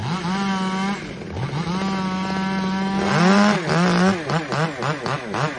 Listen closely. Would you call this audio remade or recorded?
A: recorded